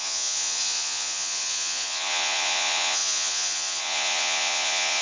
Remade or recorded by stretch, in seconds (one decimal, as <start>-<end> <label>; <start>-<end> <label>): 0.0-5.0 remade